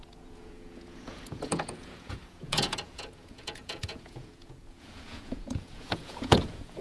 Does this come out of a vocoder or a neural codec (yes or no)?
yes